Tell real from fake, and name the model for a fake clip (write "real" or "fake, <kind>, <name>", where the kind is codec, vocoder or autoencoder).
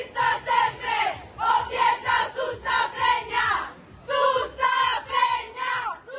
real